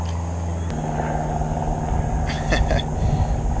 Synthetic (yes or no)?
no